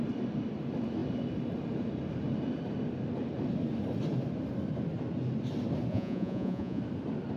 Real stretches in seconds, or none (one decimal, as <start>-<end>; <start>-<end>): 0.0-5.9; 6.8-7.4